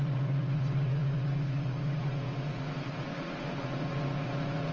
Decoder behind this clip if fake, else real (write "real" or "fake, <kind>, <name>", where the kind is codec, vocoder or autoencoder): fake, vocoder, Vocos